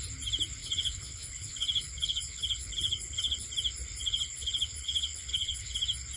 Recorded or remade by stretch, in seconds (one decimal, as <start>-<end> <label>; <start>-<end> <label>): 0.0-0.6 recorded; 0.6-3.5 remade; 3.5-4.0 recorded; 4.0-5.8 remade; 5.8-6.2 recorded